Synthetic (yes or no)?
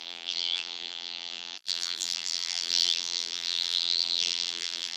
yes